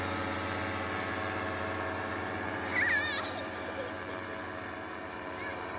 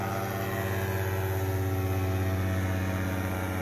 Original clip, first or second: second